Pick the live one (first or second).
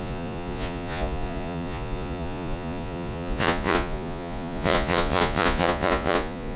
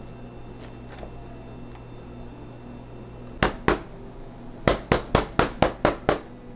second